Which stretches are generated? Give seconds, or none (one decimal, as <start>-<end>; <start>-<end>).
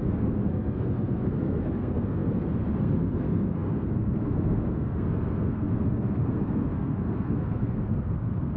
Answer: 0.0-8.6